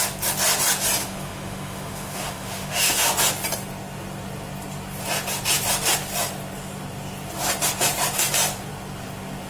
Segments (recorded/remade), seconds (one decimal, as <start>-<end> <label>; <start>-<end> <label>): 0.0-1.0 recorded; 1.0-3.1 remade; 3.1-9.5 recorded